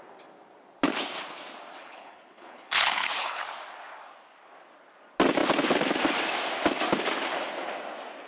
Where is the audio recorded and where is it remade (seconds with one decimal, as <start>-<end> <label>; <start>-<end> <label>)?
0.0-1.8 recorded; 1.8-3.4 remade; 3.4-8.3 recorded

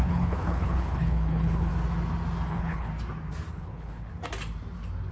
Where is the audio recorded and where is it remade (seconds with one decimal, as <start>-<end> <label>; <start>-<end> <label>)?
0.0-1.7 remade; 1.7-2.5 recorded; 2.5-2.9 remade; 2.9-3.5 recorded; 3.5-4.1 remade; 4.1-5.1 recorded

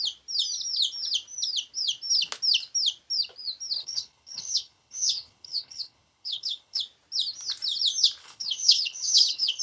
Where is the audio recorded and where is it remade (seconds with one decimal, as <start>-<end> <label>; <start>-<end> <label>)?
0.0-3.8 recorded; 3.8-6.8 remade; 6.8-8.2 recorded; 8.2-9.6 remade

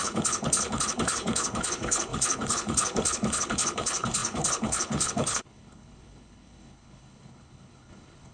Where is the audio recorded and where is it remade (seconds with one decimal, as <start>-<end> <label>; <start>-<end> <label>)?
0.0-8.3 remade

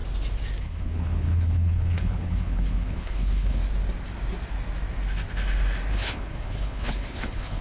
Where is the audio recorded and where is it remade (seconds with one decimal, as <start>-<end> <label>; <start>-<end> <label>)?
0.0-0.6 recorded; 0.6-3.6 remade; 3.6-5.9 recorded; 5.9-7.6 remade

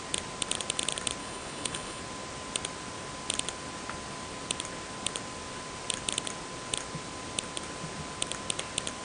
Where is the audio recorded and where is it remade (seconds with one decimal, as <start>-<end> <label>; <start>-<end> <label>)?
0.0-1.2 recorded; 1.2-2.0 remade; 2.0-9.0 recorded

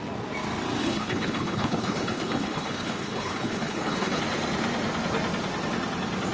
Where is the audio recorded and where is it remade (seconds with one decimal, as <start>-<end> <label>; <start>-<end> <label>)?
0.0-0.8 recorded; 0.8-4.2 remade; 4.2-6.3 recorded